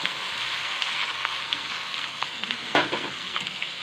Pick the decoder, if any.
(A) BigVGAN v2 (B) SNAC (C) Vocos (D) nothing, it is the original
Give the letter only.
B